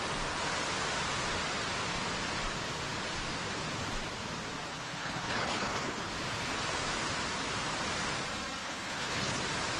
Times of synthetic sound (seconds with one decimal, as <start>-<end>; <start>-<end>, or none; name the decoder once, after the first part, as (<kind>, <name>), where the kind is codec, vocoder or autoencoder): 4.7-6.1 (codec, HILCodec); 8.6-9.4